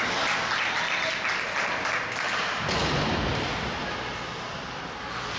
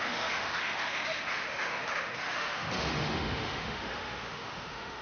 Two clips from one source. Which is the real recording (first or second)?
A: first